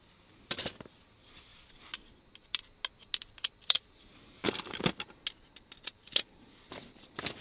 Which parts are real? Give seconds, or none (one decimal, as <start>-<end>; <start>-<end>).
0.0-7.4